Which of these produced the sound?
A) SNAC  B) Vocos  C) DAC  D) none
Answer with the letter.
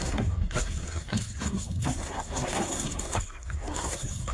A